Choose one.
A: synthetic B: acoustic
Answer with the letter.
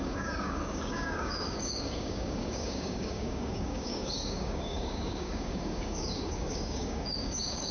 A